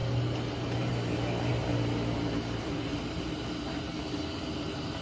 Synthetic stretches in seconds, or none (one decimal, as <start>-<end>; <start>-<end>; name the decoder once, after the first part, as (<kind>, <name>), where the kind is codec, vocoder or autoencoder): 1.5-2.8 (vocoder, BigVGAN v2)